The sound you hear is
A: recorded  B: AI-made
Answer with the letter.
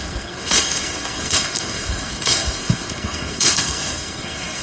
B